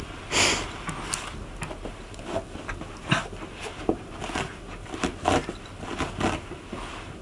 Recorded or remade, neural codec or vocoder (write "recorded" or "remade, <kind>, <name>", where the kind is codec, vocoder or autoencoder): recorded